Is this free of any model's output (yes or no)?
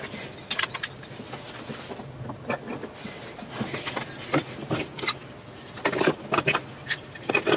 yes